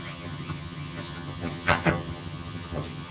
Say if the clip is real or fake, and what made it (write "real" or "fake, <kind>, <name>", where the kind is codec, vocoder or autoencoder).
fake, vocoder, HiFi-GAN